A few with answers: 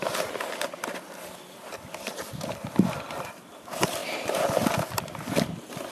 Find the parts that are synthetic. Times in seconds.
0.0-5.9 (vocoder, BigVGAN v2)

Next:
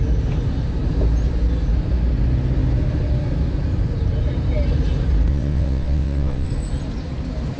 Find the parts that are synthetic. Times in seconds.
5.3-6.5 (vocoder, WaveNeXt)

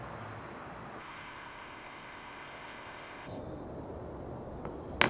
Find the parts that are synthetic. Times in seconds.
1.0-3.4 (codec, ZipCodec)

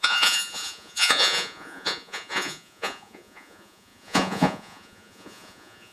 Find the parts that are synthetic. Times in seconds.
0.0-5.9 (vocoder, Vocos)

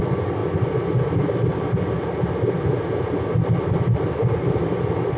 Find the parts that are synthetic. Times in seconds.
none

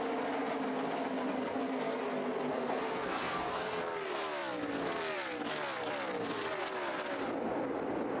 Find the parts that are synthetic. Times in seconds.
1.3-2.0 (codec, SNAC); 2.5-3.8